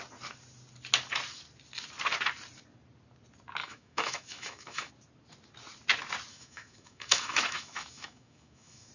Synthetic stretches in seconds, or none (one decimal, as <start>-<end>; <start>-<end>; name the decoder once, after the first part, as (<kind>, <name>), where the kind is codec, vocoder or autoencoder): 3.6-4.9 (autoencoder, DAC-VAE); 6.3-8.9